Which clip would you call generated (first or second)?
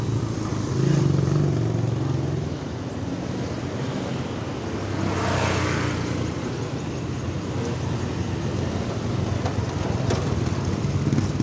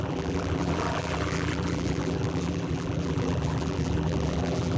second